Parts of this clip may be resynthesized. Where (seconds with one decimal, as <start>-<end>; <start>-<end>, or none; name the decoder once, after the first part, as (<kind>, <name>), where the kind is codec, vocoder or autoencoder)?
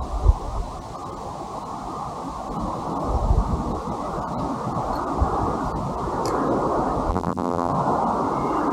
7.1-7.7 (vocoder, BigVGAN v2)